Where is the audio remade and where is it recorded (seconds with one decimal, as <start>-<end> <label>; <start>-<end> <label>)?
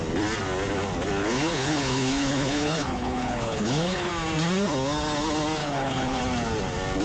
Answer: 0.0-1.2 recorded; 1.2-4.1 remade; 4.1-5.6 recorded; 5.6-6.2 remade; 6.2-7.0 recorded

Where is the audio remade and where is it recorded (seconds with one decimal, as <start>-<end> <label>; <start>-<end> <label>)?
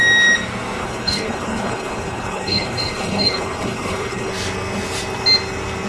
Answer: 0.0-0.8 recorded; 0.8-4.3 remade; 4.3-5.9 recorded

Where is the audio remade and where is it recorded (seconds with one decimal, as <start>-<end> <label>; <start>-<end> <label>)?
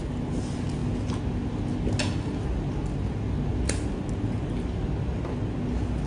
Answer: 0.0-6.1 recorded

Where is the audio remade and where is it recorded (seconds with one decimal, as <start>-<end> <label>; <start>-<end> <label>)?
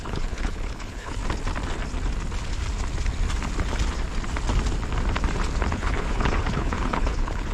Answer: 0.0-1.2 remade; 1.2-5.7 recorded; 5.7-7.5 remade